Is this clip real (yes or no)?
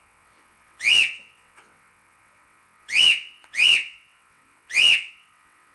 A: no